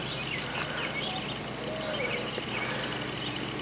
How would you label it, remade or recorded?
recorded